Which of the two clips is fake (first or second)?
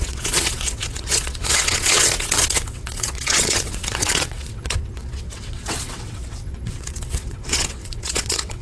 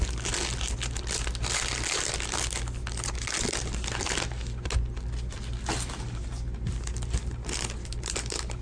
first